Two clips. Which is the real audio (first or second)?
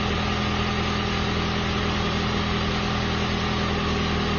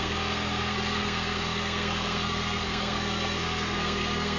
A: first